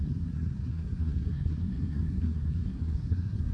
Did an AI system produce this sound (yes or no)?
yes